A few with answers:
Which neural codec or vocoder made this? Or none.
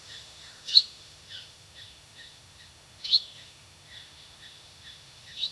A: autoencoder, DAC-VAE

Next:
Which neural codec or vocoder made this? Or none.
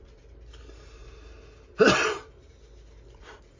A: none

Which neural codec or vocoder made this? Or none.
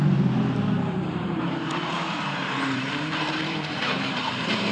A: vocoder, BigVGAN v2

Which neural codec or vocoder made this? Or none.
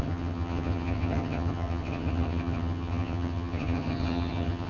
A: vocoder, HiFi-GAN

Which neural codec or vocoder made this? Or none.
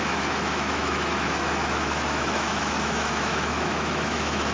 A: autoencoder, DAC-VAE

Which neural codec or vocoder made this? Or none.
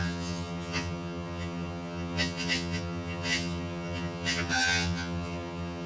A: vocoder, HiFi-GAN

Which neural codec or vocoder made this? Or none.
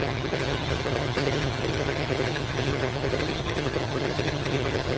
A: vocoder, HiFi-GAN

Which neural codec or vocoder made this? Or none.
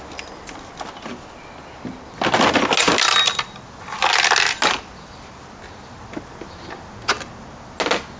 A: none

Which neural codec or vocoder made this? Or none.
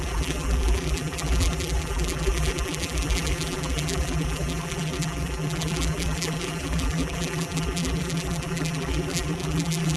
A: vocoder, BigVGAN v2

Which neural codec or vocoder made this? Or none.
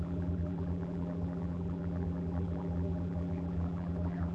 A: vocoder, BigVGAN v2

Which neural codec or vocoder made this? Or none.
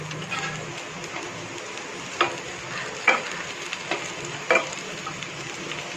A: none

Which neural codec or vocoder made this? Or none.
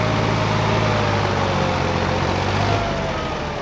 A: none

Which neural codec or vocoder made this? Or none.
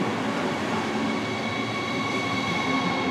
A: none